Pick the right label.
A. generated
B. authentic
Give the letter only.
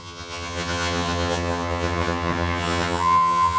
A